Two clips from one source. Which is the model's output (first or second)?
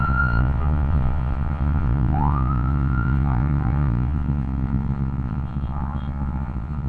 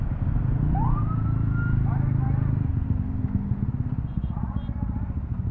first